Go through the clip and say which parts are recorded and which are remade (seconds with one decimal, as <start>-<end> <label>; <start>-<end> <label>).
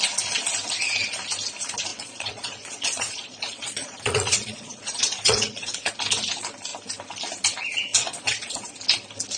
0.0-1.9 recorded; 1.9-5.9 remade; 5.9-7.9 recorded; 7.9-8.7 remade; 8.7-9.4 recorded